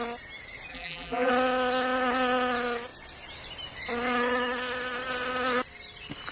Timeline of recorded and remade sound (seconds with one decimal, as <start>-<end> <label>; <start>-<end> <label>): 0.0-0.7 recorded; 0.7-1.3 remade; 1.3-6.3 recorded